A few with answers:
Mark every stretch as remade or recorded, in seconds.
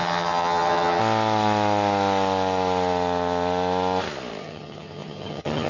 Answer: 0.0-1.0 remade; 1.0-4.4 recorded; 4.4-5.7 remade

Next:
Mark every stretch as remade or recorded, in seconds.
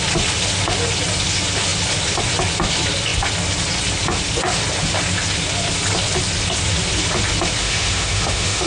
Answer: 0.0-7.6 recorded; 7.6-8.7 remade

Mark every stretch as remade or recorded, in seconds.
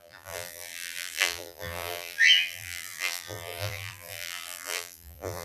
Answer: 0.0-5.4 remade